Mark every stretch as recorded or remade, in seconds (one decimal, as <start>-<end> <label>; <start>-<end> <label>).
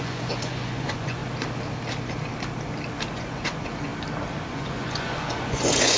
0.0-1.2 remade; 1.2-3.1 recorded; 3.1-3.9 remade; 3.9-4.5 recorded; 4.5-6.0 remade